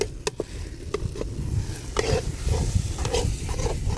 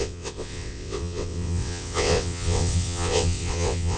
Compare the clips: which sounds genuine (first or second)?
first